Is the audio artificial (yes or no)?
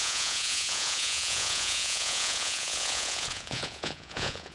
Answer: yes